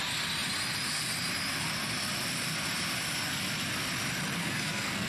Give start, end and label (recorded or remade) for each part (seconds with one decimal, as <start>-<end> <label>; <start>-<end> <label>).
0.0-4.4 recorded; 4.4-5.1 remade